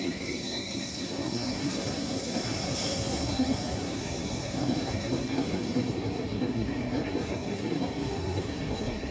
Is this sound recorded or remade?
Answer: remade